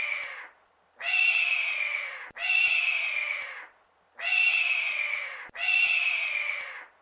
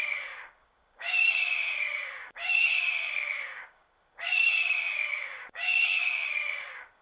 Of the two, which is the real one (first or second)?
first